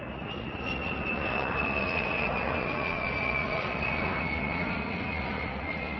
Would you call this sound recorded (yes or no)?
no